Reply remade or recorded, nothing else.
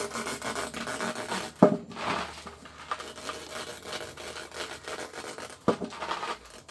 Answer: recorded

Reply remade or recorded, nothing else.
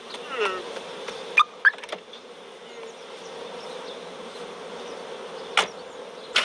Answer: recorded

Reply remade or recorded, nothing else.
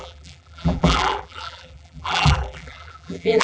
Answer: remade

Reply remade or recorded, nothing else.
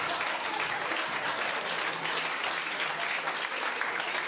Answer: recorded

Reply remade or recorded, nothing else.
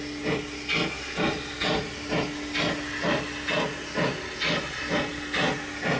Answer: recorded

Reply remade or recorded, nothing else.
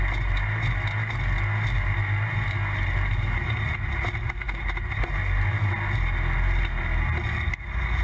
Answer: recorded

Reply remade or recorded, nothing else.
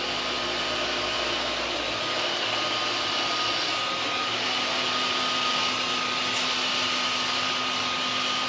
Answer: recorded